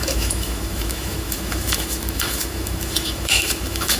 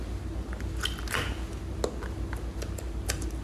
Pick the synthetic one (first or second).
first